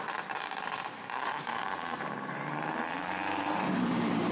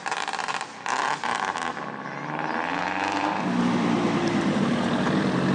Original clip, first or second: second